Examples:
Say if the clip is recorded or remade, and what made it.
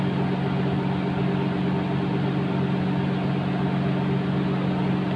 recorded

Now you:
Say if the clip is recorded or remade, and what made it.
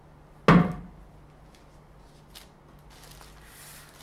recorded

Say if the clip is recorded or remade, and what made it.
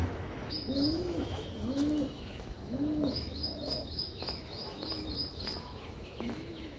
remade, autoencoder, DAC-VAE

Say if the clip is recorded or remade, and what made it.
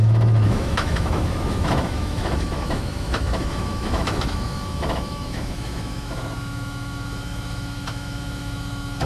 remade, autoencoder, DAC-VAE